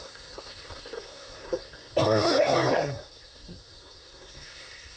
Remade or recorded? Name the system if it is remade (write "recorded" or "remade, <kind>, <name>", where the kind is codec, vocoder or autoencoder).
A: remade, codec, SNAC